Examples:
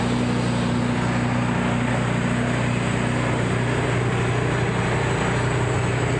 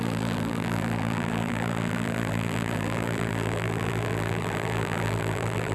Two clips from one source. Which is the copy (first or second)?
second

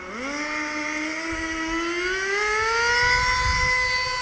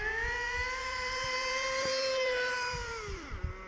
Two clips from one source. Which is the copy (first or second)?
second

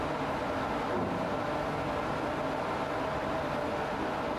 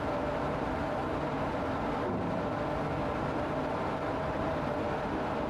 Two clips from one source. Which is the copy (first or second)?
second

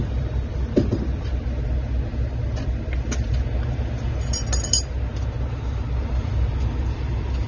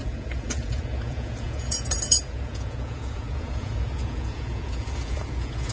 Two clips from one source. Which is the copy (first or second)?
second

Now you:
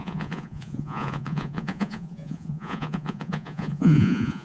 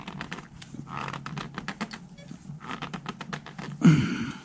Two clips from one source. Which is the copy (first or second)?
first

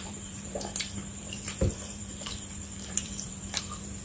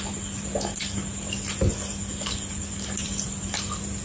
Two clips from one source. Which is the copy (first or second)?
first